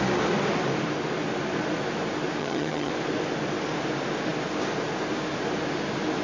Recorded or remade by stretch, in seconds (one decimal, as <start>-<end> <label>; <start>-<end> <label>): 0.0-2.4 recorded; 2.4-2.9 remade; 2.9-6.2 recorded